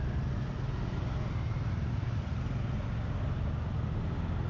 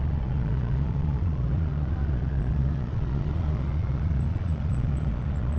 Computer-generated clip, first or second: second